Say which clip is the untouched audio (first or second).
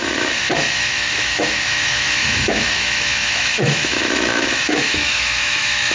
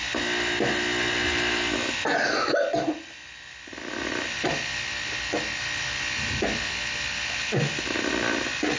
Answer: second